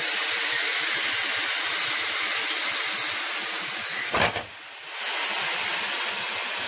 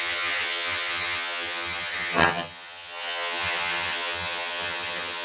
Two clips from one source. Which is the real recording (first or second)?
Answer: first